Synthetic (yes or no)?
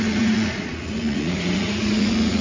yes